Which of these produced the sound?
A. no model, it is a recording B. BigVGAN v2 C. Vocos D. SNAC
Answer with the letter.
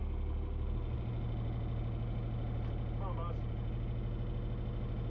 A